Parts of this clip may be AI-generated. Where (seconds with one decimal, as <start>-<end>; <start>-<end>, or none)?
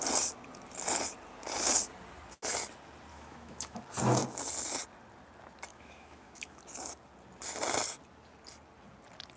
3.1-3.8; 5.7-6.6